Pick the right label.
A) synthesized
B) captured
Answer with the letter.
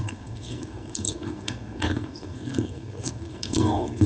A